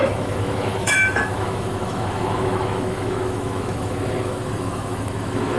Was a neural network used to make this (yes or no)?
yes